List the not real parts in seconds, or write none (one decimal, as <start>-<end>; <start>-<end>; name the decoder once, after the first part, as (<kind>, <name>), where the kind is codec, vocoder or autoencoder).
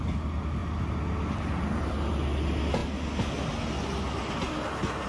none